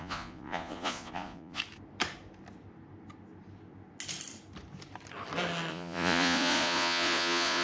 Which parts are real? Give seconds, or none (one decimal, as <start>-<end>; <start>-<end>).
1.6-5.7